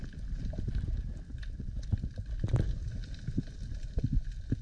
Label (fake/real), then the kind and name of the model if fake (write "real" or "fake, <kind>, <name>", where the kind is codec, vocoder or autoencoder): real